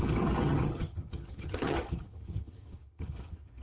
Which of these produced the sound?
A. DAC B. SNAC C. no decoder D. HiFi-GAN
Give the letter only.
D